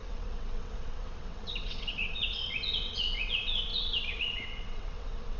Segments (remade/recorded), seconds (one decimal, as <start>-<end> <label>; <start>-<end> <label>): 0.0-5.4 remade